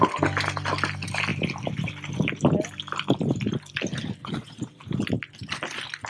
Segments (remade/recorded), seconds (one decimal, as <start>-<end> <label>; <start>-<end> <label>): 0.0-4.2 recorded; 4.2-4.8 remade; 4.8-6.1 recorded